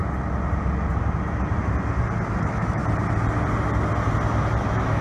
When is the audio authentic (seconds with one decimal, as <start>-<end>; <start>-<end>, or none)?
0.0-2.4; 2.8-4.6